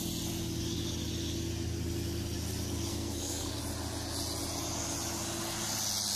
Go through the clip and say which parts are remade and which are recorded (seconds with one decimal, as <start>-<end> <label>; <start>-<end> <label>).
0.0-2.9 recorded; 2.9-3.6 remade; 3.6-6.2 recorded